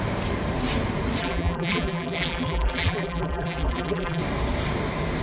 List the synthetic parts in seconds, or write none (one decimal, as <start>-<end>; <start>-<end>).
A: 1.2-4.2